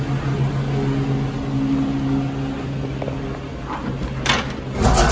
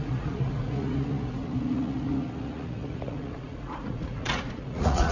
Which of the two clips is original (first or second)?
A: first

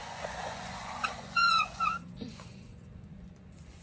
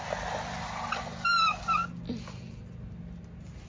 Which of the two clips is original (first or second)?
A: second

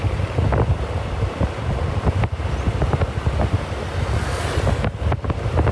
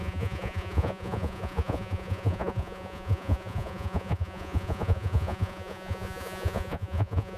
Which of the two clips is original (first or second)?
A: first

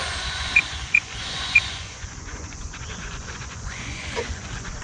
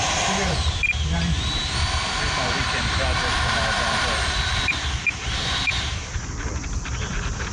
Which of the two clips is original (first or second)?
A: second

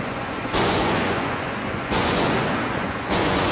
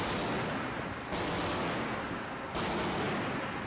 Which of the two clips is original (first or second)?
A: second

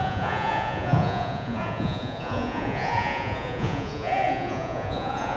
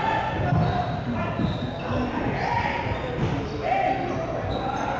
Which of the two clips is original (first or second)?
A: second